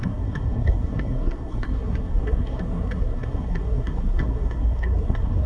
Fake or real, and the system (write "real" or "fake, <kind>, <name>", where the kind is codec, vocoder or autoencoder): fake, codec, SNAC